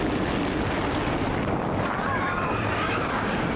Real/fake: real